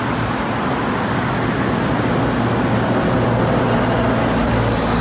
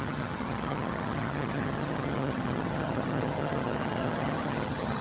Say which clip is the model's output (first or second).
second